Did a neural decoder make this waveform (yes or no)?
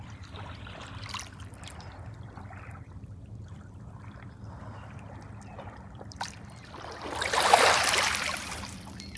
yes